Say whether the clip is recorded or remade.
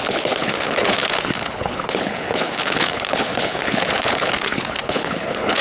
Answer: remade